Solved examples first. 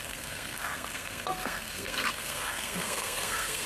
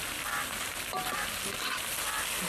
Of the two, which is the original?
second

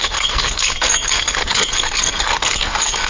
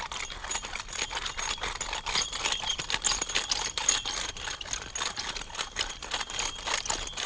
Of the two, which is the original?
second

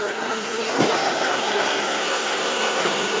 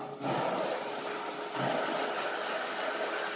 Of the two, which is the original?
second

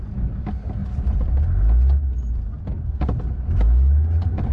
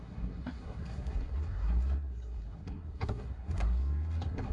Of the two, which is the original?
first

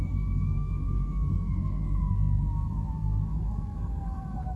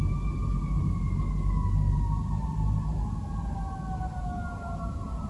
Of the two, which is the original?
second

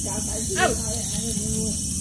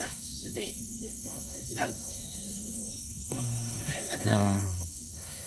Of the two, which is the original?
first